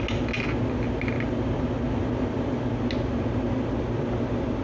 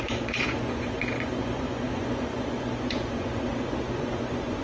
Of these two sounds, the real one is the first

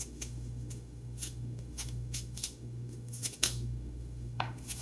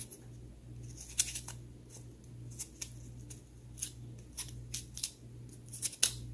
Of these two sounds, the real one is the second